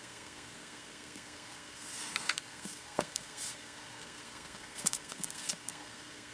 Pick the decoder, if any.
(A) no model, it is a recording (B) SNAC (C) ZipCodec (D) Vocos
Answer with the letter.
B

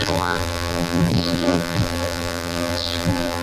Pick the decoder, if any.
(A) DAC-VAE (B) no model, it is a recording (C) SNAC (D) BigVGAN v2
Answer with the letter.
D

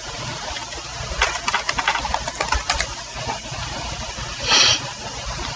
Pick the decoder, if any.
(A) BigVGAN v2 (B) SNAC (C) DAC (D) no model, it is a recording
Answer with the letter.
D